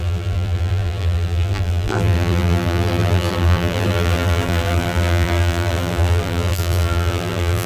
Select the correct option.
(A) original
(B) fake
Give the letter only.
B